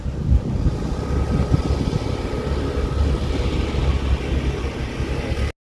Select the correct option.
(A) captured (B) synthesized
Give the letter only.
A